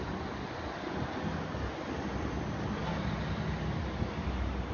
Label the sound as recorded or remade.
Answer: recorded